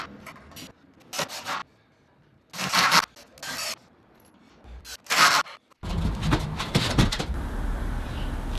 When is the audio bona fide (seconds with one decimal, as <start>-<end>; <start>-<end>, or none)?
0.0-8.6

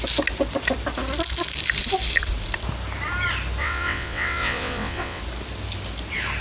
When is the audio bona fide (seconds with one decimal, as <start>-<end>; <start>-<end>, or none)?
0.0-3.6; 5.2-6.4

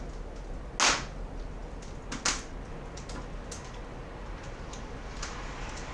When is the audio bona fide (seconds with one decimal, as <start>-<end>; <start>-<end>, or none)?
0.0-5.9

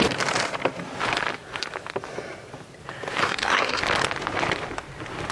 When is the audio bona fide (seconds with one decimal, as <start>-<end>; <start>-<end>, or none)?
0.0-3.2; 3.8-5.3

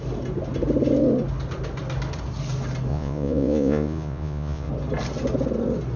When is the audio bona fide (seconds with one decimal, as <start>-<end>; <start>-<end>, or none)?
0.0-2.9; 4.7-6.0

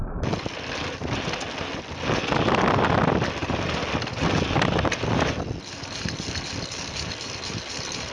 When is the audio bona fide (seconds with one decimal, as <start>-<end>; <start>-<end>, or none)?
0.0-8.1